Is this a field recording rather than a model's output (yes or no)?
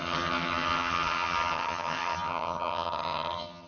no